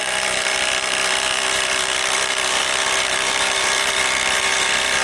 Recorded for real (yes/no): no